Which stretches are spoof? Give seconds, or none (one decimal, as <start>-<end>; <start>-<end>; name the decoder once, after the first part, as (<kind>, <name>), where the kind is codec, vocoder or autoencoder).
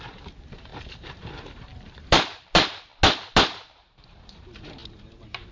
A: 0.0-2.9 (vocoder, BigVGAN v2); 3.7-5.5